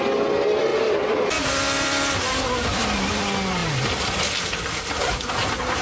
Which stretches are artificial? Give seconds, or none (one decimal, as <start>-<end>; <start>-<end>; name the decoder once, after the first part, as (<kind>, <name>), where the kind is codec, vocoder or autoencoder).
0.7-2.0 (vocoder, BigVGAN v2)